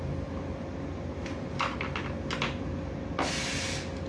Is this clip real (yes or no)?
yes